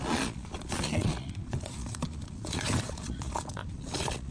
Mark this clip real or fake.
fake